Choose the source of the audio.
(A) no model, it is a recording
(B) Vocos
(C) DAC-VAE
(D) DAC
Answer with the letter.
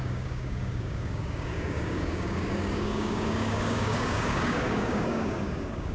D